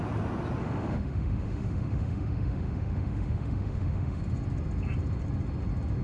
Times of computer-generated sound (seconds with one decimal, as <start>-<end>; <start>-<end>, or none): 0.6-4.2